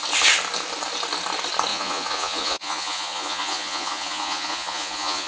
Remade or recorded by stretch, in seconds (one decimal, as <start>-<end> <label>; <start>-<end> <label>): 0.0-1.7 recorded; 1.7-5.3 remade

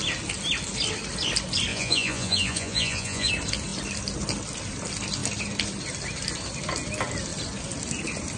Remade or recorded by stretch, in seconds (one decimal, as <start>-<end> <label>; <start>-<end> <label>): 0.0-1.7 recorded; 1.7-3.3 remade; 3.3-8.4 recorded

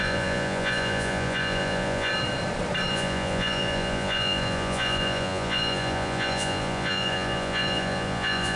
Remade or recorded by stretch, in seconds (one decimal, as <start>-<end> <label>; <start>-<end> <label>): 0.0-2.1 remade; 2.1-2.9 recorded; 2.9-8.6 remade

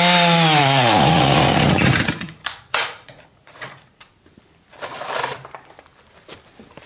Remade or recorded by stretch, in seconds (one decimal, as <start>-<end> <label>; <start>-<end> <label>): 0.0-0.6 recorded; 0.6-4.1 remade; 4.1-6.9 recorded

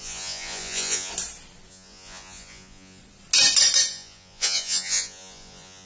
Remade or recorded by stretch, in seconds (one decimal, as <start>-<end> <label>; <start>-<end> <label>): 0.0-1.1 remade; 1.1-1.7 recorded; 1.7-3.0 remade; 3.0-3.9 recorded; 3.9-5.9 remade